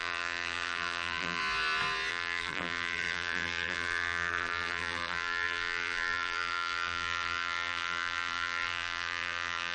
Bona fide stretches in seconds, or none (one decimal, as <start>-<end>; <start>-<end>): 1.4-2.1